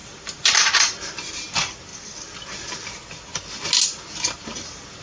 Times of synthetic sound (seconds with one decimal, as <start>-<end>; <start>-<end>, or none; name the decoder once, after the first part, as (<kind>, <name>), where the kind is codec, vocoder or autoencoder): none